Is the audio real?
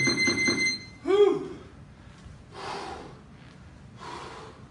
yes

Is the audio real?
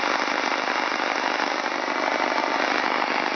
yes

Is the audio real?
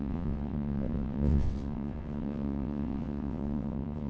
no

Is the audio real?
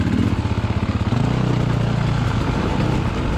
yes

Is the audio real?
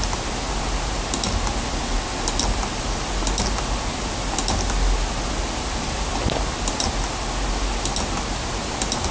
yes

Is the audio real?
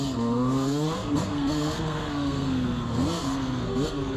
no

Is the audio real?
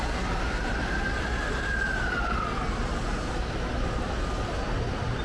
yes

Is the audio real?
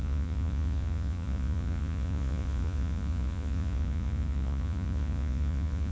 no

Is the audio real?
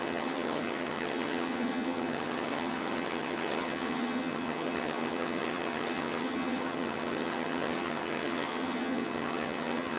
no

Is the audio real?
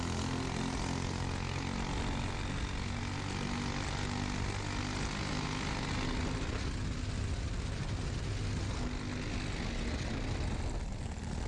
yes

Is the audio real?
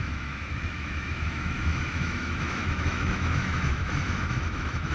no